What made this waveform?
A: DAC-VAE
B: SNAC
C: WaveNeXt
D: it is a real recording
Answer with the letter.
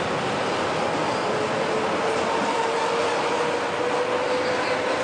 D